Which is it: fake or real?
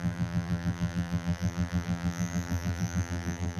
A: fake